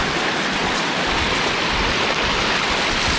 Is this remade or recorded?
recorded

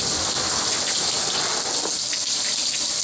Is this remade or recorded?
recorded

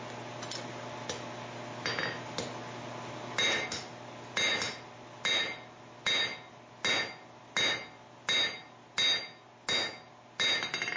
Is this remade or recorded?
recorded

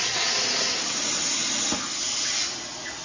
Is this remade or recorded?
recorded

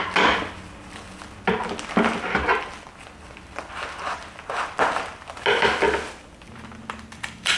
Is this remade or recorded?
recorded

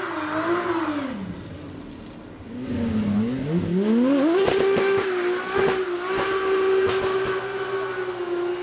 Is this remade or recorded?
recorded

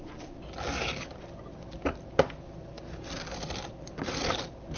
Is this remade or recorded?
recorded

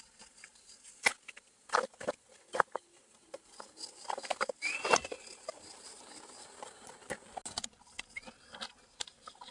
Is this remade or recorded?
recorded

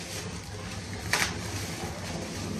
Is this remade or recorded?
recorded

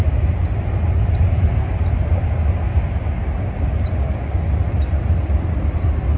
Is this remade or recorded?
recorded